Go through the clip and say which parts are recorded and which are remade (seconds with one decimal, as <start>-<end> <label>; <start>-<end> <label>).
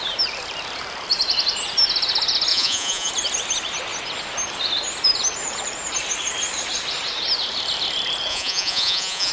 0.0-2.5 recorded; 2.5-3.1 remade; 3.1-8.3 recorded; 8.3-9.3 remade